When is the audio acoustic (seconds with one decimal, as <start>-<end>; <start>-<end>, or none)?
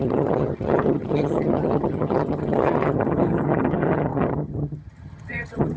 none